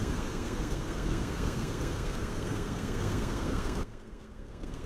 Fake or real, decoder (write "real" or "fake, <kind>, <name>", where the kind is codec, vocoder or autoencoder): fake, codec, SNAC